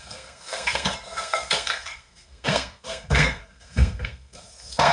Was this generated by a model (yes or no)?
yes